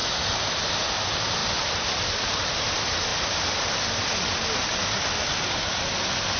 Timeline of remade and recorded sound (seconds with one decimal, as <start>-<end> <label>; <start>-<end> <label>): 0.0-1.4 recorded; 1.4-2.6 remade; 2.6-6.4 recorded